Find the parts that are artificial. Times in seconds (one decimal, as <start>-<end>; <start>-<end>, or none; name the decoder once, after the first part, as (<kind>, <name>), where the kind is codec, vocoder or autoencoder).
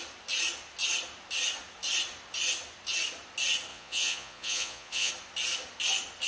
3.7-5.1 (vocoder, Vocos)